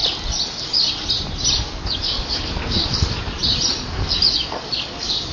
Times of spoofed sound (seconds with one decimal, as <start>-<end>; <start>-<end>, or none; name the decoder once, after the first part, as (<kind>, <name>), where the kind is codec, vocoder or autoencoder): 1.6-3.4 (codec, DAC); 3.9-5.3